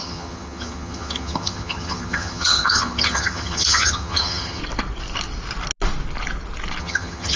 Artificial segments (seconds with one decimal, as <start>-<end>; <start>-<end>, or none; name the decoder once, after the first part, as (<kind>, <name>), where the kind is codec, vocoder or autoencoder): 0.0-4.6 (vocoder, HiFi-GAN); 6.8-7.4